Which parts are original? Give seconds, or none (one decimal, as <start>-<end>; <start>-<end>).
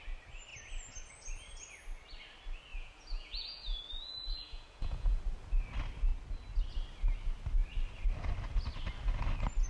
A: 0.0-2.7; 5.2-9.7